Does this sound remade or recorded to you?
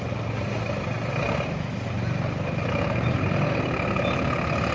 recorded